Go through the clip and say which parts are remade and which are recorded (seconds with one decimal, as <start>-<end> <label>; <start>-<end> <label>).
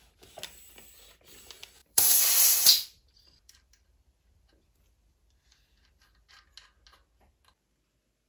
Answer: 0.0-1.8 recorded; 1.8-6.3 remade; 6.3-8.3 recorded